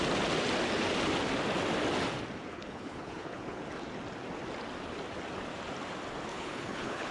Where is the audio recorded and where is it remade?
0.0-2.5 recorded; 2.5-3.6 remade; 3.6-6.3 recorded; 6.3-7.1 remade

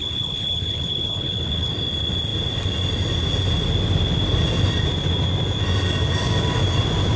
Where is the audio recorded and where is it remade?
0.0-1.7 remade; 1.7-7.2 recorded

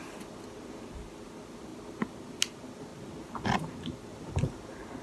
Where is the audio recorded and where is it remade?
0.0-5.0 recorded

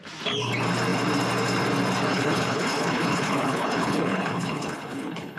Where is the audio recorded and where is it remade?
0.0-2.1 recorded; 2.1-5.4 remade

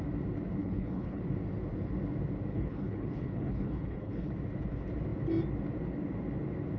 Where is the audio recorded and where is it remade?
0.0-0.6 recorded; 0.6-1.2 remade; 1.2-2.5 recorded; 2.5-4.3 remade; 4.3-6.8 recorded